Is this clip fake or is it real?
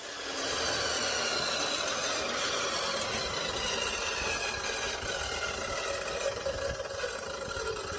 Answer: real